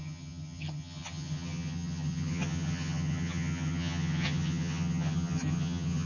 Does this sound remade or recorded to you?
remade